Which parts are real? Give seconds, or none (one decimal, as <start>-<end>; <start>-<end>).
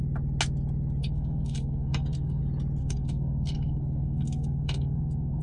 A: 0.0-1.0; 2.4-2.8